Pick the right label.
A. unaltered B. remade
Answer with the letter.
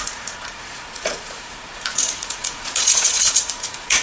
B